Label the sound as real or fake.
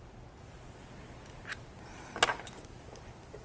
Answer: real